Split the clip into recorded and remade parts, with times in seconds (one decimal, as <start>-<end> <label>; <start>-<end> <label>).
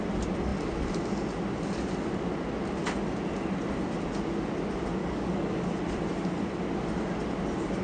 0.0-5.0 recorded; 5.0-5.7 remade; 5.7-7.8 recorded